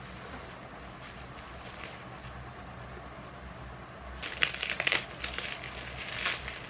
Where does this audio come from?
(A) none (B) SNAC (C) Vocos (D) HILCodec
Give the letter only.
A